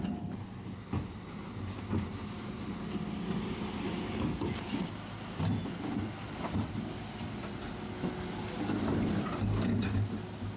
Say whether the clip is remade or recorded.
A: recorded